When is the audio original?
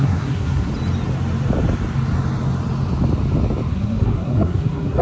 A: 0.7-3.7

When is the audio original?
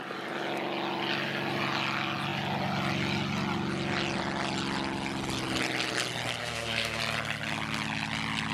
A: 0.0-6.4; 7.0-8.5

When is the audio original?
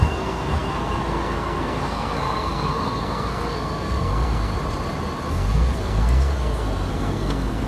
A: 4.5-5.3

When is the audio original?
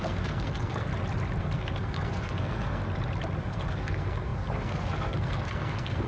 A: 0.9-1.4; 2.8-3.4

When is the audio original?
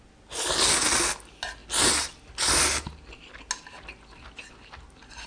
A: 0.0-5.3